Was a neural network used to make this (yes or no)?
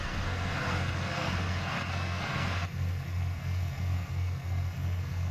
yes